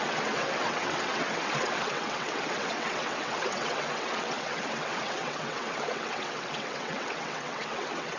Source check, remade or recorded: remade